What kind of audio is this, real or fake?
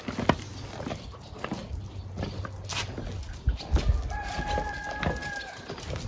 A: real